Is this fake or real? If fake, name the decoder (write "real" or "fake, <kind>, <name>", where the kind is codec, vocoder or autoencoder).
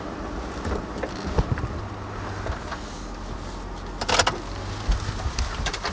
real